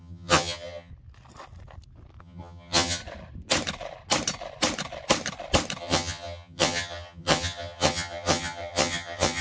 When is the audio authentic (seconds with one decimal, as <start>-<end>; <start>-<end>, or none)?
0.9-2.2; 3.0-5.8

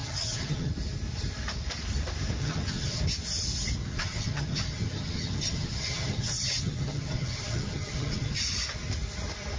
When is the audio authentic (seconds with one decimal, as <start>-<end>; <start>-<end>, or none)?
0.7-2.4; 3.0-3.8; 8.4-9.6

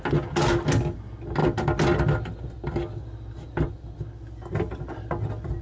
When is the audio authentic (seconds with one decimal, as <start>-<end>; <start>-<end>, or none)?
0.0-5.6

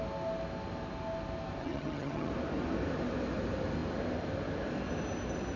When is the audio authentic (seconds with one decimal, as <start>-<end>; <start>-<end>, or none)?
0.0-1.6; 2.3-5.6

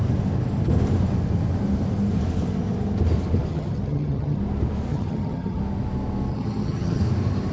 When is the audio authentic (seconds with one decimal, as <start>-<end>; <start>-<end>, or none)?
0.0-3.5; 4.4-4.9; 5.6-6.3; 7.0-7.5